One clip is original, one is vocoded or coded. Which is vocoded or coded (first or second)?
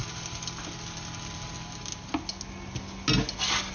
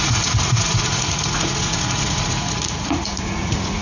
second